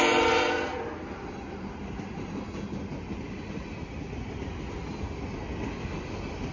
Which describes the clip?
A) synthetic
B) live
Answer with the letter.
B